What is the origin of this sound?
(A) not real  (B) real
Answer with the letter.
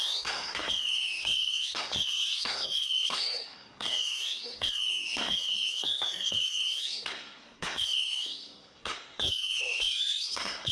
A